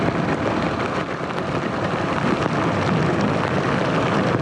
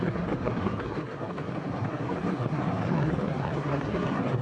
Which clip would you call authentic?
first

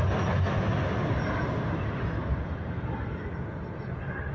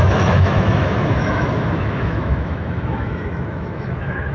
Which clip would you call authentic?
first